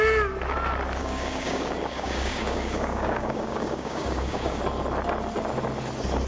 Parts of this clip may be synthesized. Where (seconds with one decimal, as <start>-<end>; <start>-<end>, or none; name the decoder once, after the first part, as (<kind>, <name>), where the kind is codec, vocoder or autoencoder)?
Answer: 1.0-4.6 (codec, DAC)